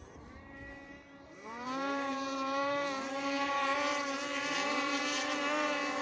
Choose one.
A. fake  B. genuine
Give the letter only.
A